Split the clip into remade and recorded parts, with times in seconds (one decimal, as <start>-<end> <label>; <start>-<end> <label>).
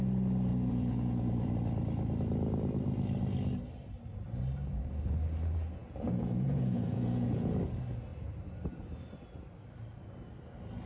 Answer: 0.0-0.5 recorded; 0.5-1.5 remade; 1.5-5.8 recorded; 5.8-7.6 remade; 7.6-10.9 recorded